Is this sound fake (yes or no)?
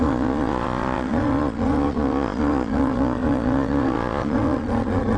yes